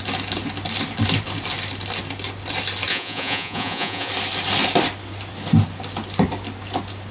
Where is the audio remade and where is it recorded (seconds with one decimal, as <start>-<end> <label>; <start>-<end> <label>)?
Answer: 0.0-2.9 recorded; 2.9-4.1 remade; 4.1-7.1 recorded